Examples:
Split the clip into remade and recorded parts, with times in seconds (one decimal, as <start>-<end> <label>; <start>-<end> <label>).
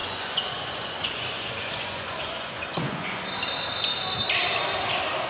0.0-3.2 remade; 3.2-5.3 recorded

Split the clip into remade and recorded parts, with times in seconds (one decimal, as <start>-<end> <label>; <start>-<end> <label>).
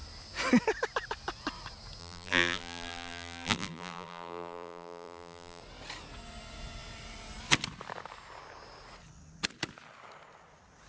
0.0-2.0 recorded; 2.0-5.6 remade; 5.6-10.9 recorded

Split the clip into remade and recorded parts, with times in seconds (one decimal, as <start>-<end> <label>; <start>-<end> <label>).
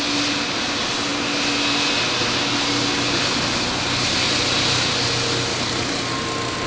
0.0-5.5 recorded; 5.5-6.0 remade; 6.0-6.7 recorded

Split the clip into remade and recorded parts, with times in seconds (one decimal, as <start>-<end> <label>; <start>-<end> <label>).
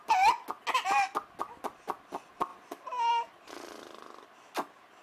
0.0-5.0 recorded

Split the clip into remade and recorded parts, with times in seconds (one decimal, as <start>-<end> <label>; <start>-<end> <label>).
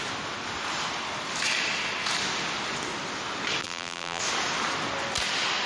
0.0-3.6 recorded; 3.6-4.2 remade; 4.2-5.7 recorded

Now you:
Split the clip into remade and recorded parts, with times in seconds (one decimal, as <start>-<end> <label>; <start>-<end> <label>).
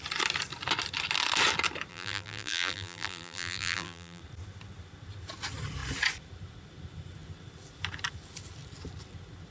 0.0-1.9 recorded; 1.9-4.2 remade; 4.2-9.5 recorded